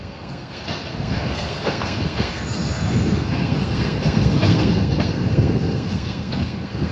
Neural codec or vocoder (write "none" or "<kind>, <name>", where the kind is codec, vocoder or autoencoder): codec, SNAC